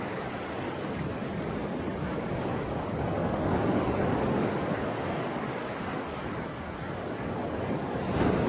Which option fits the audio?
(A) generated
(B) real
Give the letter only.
A